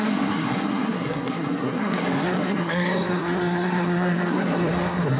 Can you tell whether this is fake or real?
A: fake